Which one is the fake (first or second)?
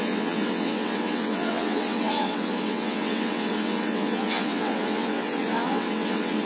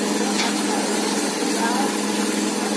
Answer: first